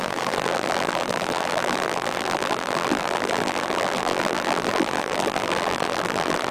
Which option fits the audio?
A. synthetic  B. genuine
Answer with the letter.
A